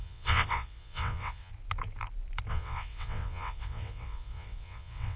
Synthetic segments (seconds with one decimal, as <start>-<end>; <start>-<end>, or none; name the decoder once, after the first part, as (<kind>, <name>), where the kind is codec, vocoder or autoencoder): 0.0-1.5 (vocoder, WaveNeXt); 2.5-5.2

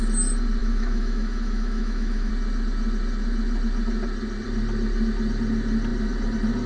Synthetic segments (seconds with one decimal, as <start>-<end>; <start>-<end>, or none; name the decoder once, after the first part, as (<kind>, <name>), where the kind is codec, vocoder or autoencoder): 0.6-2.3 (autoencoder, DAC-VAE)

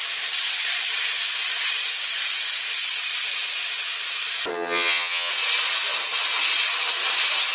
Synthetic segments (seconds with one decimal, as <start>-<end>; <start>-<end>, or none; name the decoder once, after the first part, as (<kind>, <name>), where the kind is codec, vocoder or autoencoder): 4.5-5.3 (vocoder, HiFi-GAN)

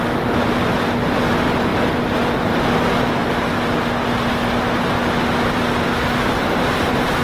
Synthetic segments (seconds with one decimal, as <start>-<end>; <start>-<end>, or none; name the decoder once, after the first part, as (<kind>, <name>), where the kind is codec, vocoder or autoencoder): none

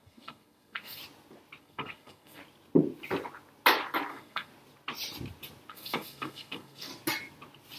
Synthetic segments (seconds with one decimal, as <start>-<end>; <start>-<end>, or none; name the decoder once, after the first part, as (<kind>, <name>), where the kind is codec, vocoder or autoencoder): 0.0-1.0 (codec, SNAC); 1.6-2.4; 4.1-4.5; 5.7-6.9

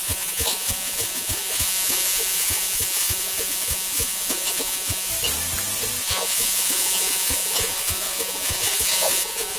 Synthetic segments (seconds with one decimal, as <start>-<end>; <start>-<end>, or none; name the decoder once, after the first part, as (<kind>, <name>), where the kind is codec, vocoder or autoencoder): 0.0-5.1 (vocoder, Vocos); 6.0-9.6

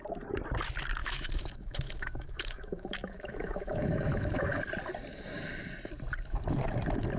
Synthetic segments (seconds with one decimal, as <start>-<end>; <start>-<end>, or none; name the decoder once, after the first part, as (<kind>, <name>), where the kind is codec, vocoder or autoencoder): 1.0-4.6 (autoencoder, DAC-VAE)

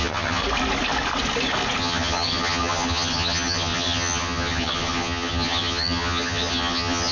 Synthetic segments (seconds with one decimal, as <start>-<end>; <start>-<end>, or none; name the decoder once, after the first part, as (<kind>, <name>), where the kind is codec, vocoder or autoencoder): 0.0-0.4 (vocoder, HiFi-GAN); 1.8-7.1